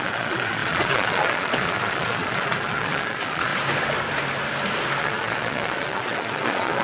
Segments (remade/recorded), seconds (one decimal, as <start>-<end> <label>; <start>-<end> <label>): 0.0-3.5 remade; 3.5-5.0 recorded; 5.0-6.8 remade